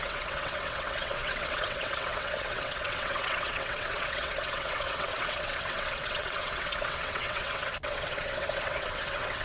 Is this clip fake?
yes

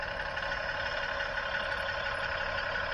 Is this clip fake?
no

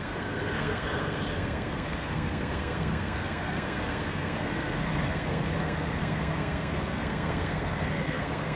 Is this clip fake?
yes